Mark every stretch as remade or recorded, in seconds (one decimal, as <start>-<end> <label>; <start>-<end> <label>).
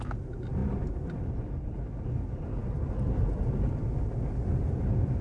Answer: 0.0-5.2 recorded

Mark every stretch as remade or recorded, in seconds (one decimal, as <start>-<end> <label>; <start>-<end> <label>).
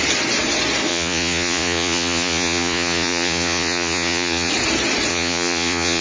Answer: 0.0-0.9 recorded; 0.9-4.5 remade; 4.5-5.1 recorded; 5.1-6.0 remade